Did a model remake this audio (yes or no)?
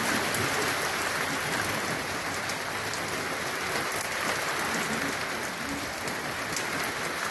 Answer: no